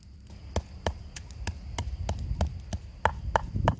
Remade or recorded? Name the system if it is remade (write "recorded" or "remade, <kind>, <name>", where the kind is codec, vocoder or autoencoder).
recorded